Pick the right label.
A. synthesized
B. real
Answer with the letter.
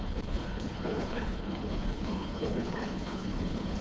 A